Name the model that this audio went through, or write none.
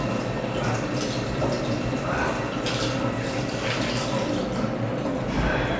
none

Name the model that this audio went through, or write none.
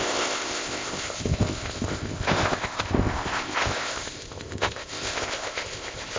codec, ZipCodec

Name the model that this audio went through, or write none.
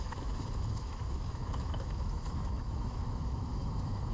autoencoder, DAC-VAE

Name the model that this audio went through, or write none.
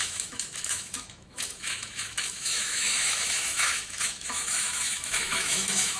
autoencoder, DAC-VAE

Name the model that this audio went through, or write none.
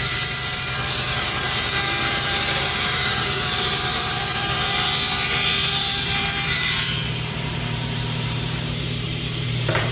vocoder, BigVGAN v2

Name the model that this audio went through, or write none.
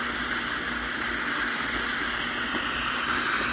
none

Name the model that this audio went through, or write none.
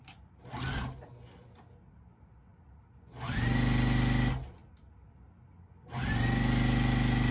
none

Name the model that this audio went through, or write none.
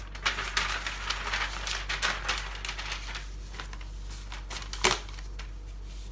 none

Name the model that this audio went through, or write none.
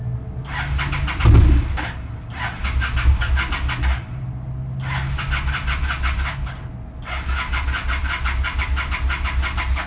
none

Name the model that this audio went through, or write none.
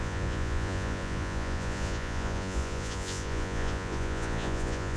vocoder, Vocos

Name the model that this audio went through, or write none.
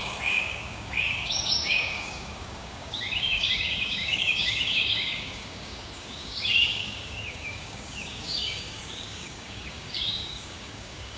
codec, DAC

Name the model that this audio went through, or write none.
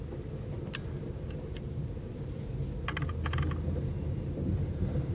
none